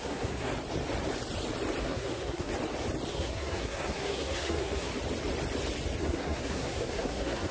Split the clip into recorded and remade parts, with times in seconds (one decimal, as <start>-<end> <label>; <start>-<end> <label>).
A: 0.0-0.5 remade; 0.5-1.8 recorded; 1.8-2.5 remade; 2.5-3.1 recorded; 3.1-4.9 remade; 4.9-6.0 recorded; 6.0-7.5 remade